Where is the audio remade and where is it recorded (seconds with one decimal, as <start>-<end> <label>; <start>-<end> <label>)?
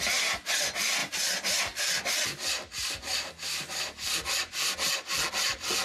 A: 0.0-5.8 recorded